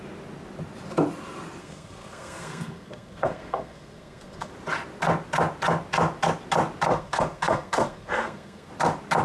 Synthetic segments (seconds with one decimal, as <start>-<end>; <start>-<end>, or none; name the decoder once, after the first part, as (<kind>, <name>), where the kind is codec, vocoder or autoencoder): 1.6-4.5 (codec, SNAC); 6.9-8.7